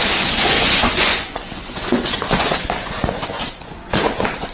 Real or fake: fake